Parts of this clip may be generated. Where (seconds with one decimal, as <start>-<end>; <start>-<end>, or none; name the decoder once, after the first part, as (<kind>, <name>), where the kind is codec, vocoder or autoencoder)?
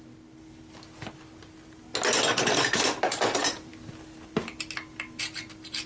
none